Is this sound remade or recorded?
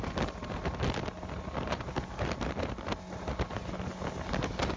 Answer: recorded